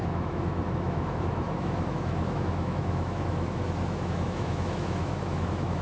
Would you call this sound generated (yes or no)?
yes